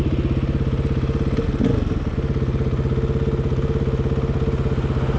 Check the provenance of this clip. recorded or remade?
recorded